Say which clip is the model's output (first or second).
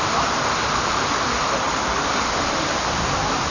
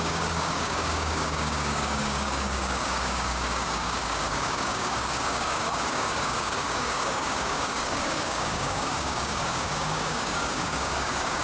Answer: second